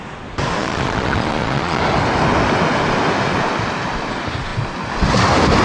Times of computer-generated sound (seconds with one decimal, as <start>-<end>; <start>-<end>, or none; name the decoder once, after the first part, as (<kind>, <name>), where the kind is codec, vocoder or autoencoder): 0.6-1.8 (vocoder, Vocos)